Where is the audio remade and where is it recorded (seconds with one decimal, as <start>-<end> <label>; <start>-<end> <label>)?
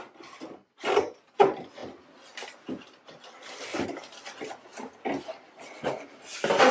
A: 0.0-6.7 recorded